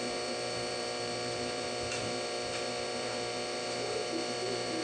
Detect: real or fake fake